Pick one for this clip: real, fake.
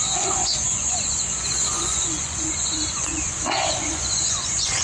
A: fake